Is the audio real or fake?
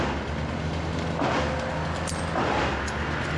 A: real